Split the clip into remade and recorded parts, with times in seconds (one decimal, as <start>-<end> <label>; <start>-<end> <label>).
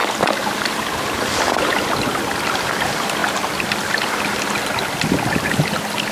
0.0-6.1 recorded